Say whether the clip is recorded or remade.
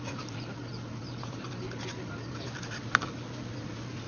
recorded